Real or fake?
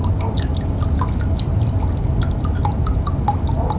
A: real